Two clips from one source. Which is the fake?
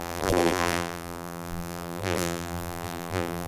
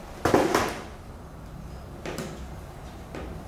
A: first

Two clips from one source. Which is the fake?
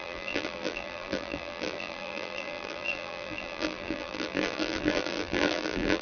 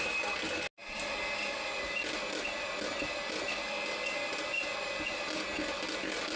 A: first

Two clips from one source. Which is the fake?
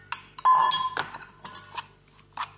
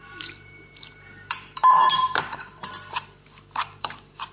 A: second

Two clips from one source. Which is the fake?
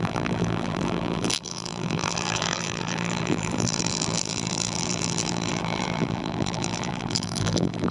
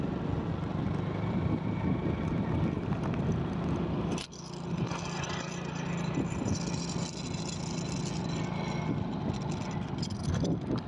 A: first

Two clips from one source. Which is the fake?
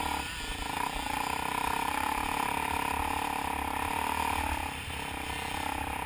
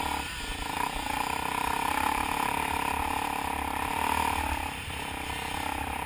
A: second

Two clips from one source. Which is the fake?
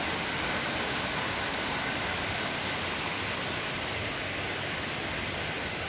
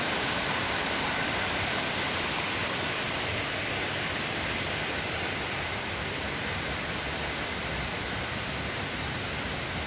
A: second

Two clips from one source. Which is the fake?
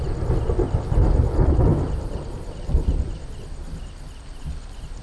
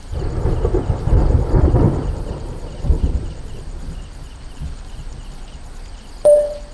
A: second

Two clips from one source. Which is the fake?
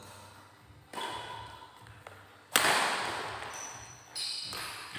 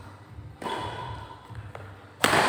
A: second